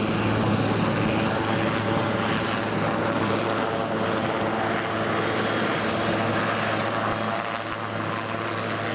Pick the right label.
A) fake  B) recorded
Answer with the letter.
B